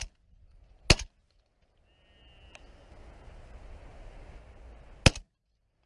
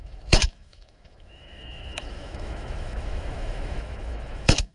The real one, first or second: first